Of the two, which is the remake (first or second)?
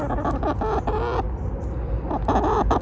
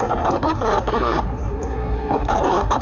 second